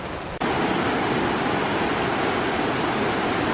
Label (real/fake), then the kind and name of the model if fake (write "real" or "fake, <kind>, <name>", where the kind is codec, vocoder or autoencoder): fake, vocoder, BigVGAN v2